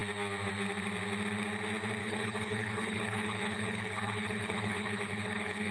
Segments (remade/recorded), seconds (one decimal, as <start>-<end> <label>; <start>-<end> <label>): 0.0-2.0 recorded; 2.0-5.7 remade